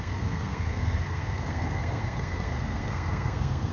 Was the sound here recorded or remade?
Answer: remade